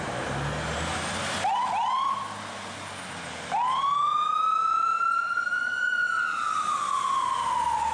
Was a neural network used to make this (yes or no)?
no